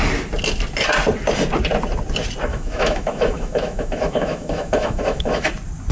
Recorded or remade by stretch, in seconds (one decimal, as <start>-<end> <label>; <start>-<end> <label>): 0.0-2.5 recorded; 2.5-5.5 remade; 5.5-5.9 recorded